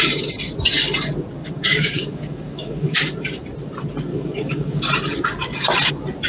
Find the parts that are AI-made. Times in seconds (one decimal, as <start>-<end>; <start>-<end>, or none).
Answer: 1.4-3.0; 4.1-4.9